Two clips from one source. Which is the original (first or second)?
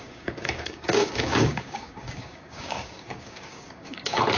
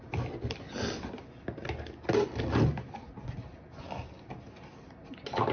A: second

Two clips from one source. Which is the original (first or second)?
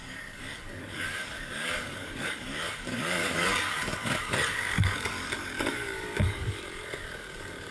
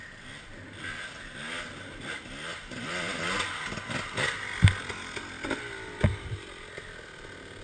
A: second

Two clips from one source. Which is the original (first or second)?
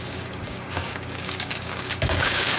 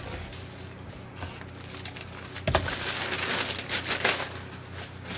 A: second